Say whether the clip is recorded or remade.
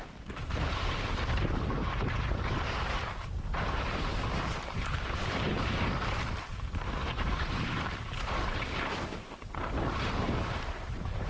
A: remade